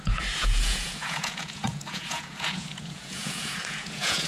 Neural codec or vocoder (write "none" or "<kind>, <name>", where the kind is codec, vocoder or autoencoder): vocoder, Vocos